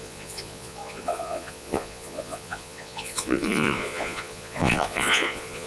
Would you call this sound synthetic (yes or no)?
yes